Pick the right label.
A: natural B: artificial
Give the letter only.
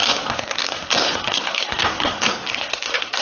B